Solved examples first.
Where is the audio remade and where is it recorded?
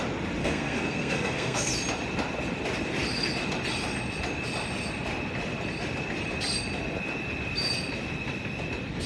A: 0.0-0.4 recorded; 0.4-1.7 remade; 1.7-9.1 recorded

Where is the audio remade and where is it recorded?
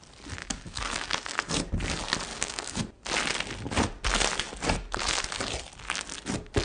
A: 0.0-0.4 recorded; 0.4-1.7 remade; 1.7-2.3 recorded; 2.3-2.8 remade; 2.8-6.6 recorded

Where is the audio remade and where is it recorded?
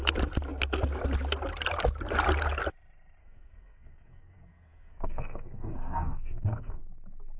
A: 0.0-3.2 recorded; 3.2-6.8 remade; 6.8-7.4 recorded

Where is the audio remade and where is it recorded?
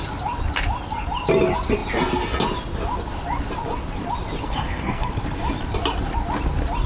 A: 0.0-4.4 recorded; 4.4-5.1 remade; 5.1-6.9 recorded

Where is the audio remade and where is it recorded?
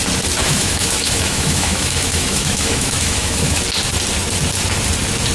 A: 0.0-0.4 recorded; 0.4-3.6 remade; 3.6-5.3 recorded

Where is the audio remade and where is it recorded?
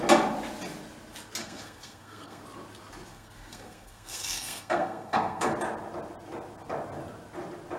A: 0.0-1.4 recorded; 1.4-2.4 remade; 2.4-3.1 recorded; 3.1-5.5 remade; 5.5-7.8 recorded